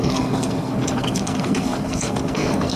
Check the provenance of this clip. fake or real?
fake